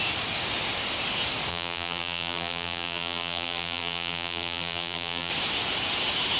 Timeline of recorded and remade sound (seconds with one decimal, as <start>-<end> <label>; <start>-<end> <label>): 0.0-1.5 recorded; 1.5-5.3 remade; 5.3-6.4 recorded